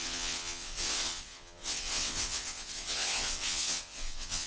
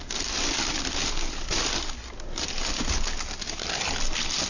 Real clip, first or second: second